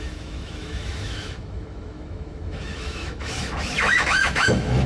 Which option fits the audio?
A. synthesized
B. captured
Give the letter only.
A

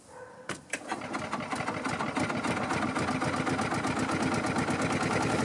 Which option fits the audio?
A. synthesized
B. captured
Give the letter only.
B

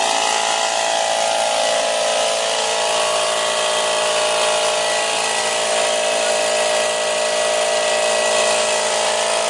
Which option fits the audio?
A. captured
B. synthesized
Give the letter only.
A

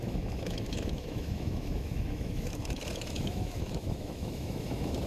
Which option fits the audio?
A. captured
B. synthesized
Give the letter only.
B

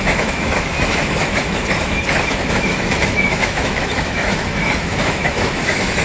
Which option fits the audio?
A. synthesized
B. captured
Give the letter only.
A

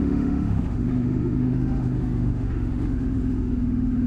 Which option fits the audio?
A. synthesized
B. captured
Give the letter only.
A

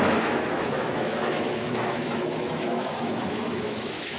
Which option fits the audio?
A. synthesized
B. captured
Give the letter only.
A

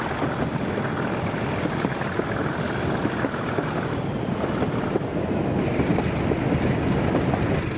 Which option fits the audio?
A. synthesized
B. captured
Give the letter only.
B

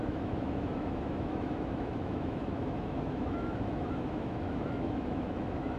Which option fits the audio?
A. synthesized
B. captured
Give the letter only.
A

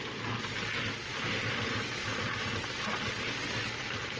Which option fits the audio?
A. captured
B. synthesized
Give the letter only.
A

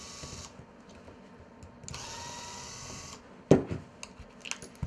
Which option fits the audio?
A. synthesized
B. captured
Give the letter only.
B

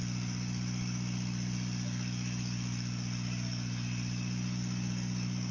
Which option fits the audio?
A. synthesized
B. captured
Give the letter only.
B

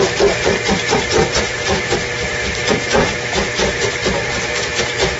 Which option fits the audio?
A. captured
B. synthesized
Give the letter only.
A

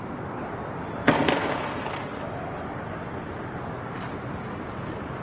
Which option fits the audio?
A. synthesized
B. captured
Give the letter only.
B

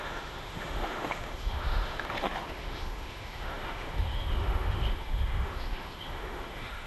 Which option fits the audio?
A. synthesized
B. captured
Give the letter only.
A